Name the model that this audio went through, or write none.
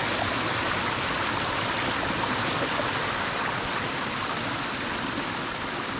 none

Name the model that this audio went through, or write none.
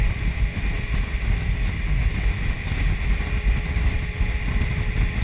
none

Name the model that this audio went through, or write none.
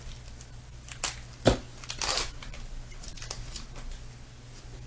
none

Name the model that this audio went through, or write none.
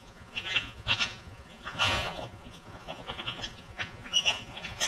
vocoder, Vocos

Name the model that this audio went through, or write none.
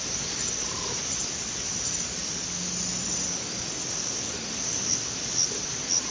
none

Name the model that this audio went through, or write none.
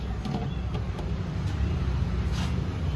none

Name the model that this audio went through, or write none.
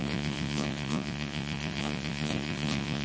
vocoder, Vocos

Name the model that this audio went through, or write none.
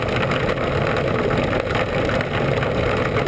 none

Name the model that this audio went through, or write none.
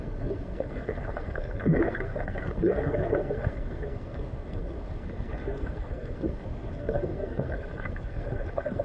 codec, SNAC